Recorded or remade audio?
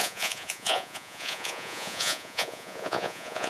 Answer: remade